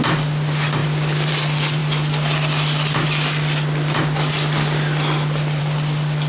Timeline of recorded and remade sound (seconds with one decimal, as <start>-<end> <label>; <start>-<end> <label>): 0.0-6.3 recorded